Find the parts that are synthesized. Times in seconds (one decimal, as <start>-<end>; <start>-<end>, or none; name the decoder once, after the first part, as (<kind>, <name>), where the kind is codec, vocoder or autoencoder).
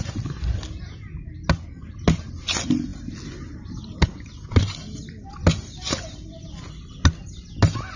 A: none